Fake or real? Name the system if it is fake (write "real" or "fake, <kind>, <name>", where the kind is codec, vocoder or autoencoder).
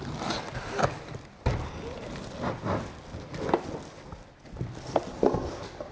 real